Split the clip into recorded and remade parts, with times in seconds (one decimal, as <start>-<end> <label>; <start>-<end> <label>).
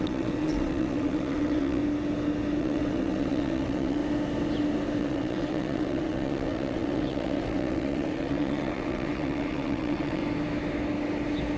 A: 0.0-1.8 remade; 1.8-2.6 recorded; 2.6-4.0 remade; 4.0-5.0 recorded; 5.0-10.2 remade; 10.2-11.6 recorded